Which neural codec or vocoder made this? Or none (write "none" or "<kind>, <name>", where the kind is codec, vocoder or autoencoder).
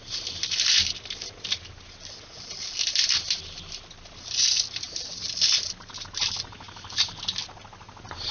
none